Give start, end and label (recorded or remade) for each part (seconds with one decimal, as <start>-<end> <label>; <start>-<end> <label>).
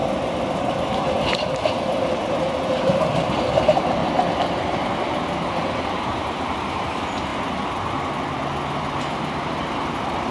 0.0-2.8 recorded; 2.8-4.0 remade; 4.0-4.5 recorded; 4.5-7.3 remade; 7.3-9.0 recorded; 9.0-10.3 remade